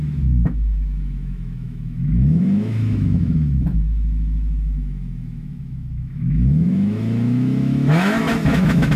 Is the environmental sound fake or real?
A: fake